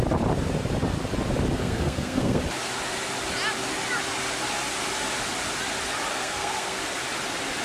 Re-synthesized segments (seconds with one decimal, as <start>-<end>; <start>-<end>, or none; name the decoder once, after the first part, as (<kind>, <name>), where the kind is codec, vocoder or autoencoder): 1.6-2.4 (codec, SNAC); 6.1-6.8